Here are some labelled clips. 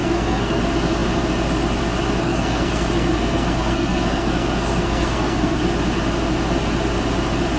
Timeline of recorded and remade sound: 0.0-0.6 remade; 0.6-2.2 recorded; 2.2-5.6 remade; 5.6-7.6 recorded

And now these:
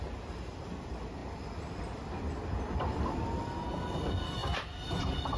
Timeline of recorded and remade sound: 0.0-5.4 recorded

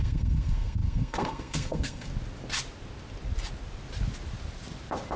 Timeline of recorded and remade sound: 0.0-2.1 remade; 2.1-5.2 recorded

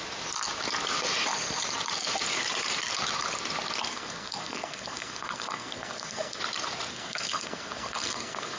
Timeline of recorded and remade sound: 0.0-3.8 recorded; 3.8-6.4 remade; 6.4-6.9 recorded; 6.9-8.6 remade

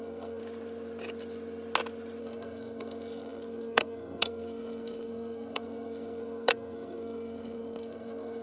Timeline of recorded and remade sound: 0.0-0.4 remade; 0.4-2.2 recorded; 2.2-8.4 remade

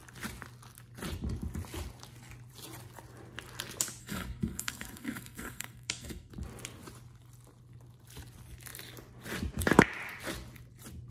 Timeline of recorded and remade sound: 0.0-4.0 recorded; 4.0-6.3 remade; 6.3-11.1 recorded

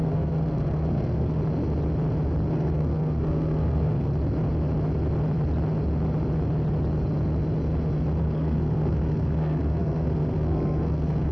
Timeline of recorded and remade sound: 0.0-1.4 remade; 1.4-2.5 recorded; 2.5-4.1 remade; 4.1-8.2 recorded; 8.2-11.3 remade